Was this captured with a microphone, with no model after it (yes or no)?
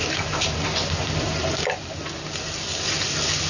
yes